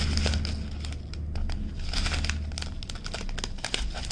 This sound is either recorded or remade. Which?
recorded